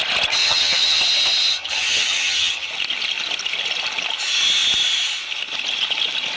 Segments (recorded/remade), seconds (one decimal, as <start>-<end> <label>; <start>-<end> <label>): 0.0-0.4 recorded; 0.4-1.0 remade; 1.0-1.5 recorded; 1.5-2.7 remade; 2.7-6.4 recorded